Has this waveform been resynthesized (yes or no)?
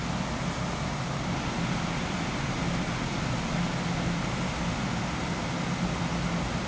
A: no